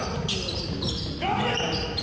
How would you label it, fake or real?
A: fake